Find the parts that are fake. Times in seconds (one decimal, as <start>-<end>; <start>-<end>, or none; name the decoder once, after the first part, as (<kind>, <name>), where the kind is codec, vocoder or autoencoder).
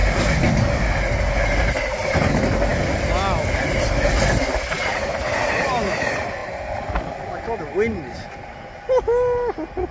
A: none